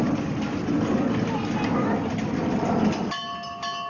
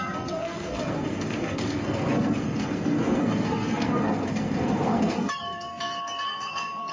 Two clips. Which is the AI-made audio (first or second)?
second